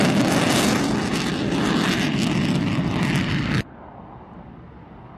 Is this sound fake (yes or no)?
no